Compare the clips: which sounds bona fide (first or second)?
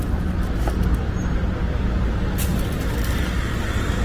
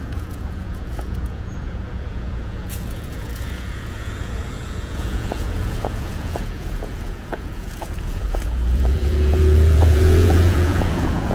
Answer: first